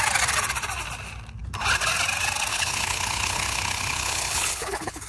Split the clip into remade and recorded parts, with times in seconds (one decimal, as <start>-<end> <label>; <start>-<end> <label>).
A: 0.0-2.5 recorded; 2.5-5.1 remade